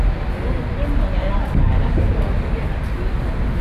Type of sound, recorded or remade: recorded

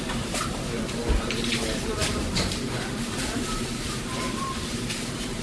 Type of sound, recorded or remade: remade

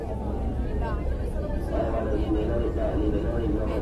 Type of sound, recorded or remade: remade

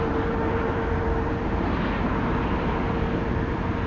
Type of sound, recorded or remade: remade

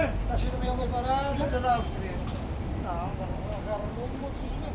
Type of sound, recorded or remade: recorded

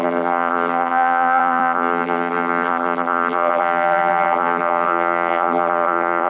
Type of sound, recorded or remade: remade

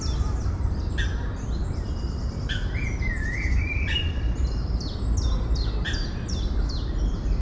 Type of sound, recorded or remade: remade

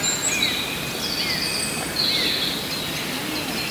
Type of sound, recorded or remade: recorded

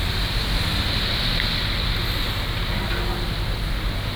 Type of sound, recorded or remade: recorded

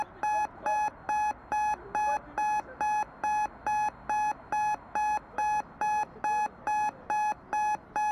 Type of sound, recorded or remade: recorded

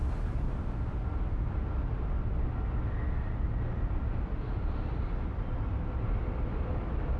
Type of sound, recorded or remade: recorded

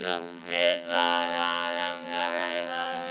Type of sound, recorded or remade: remade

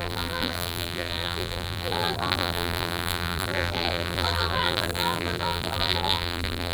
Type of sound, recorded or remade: remade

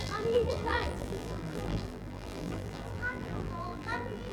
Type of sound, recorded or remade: remade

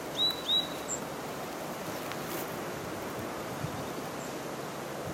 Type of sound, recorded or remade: recorded